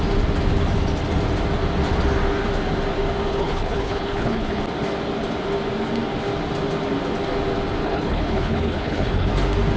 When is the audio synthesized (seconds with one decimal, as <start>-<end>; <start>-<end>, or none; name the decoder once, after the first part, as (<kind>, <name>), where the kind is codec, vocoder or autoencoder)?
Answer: 3.3-4.6 (codec, HILCodec); 7.8-9.3